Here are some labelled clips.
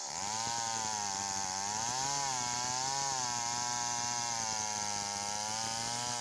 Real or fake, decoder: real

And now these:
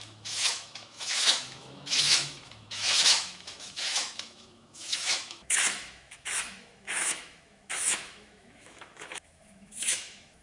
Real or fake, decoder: fake, autoencoder, DAC-VAE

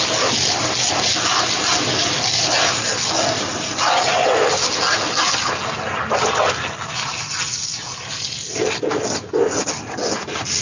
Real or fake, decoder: real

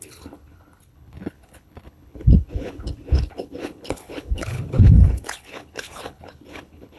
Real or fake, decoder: fake, codec, HILCodec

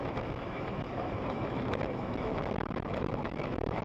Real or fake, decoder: fake, autoencoder, DAC-VAE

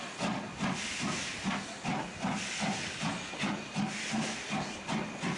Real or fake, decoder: real